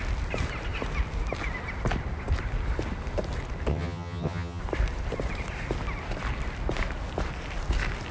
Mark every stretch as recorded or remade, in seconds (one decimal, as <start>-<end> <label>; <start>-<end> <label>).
0.0-3.7 recorded; 3.7-4.6 remade; 4.6-8.1 recorded